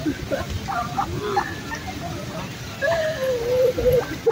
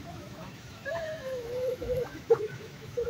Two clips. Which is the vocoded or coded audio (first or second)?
second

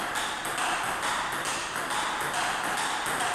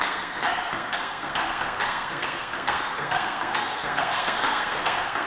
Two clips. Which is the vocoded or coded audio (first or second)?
second